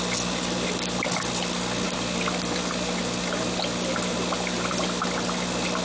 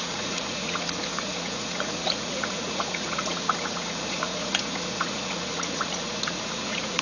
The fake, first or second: second